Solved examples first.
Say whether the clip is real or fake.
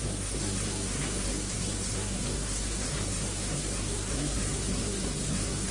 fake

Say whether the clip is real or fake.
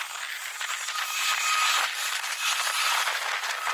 real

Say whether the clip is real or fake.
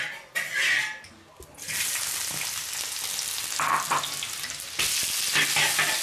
real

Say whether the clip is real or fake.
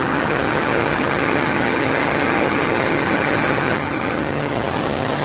fake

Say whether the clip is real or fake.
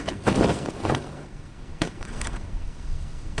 fake